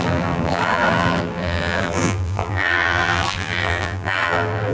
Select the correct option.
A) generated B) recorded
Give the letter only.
A